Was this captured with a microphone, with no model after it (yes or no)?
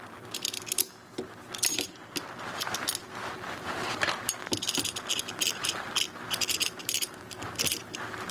yes